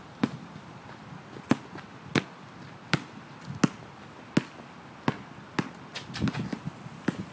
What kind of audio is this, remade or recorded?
recorded